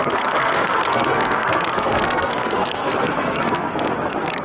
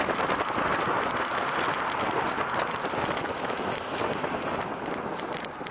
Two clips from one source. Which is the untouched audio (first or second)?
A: second